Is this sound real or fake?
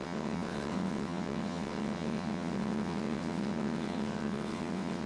fake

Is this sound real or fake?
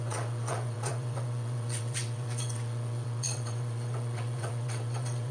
fake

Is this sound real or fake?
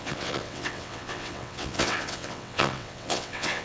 fake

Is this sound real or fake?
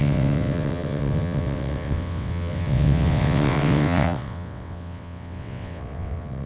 fake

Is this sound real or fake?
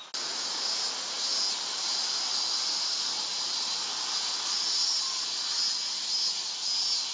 real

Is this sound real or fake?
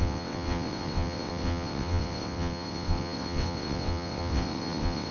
fake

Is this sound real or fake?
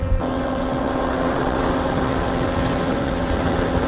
fake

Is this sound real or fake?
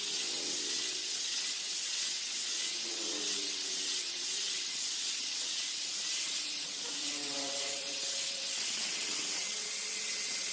fake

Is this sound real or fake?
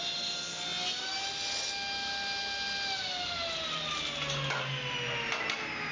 real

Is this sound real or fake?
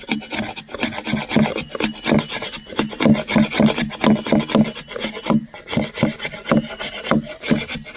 real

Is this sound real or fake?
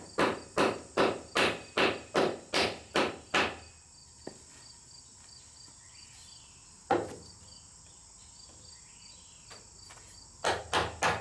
real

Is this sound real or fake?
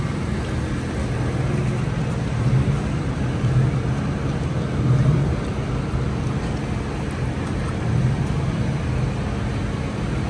real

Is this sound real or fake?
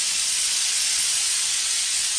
fake